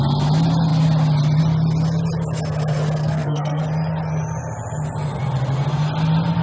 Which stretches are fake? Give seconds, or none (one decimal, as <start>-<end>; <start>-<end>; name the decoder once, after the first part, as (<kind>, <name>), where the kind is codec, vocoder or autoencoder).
3.0-3.6 (codec, SNAC)